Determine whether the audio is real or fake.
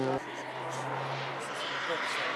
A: real